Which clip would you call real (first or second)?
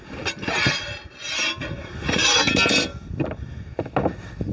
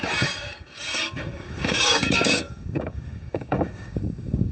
first